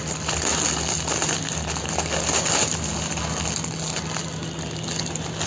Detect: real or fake real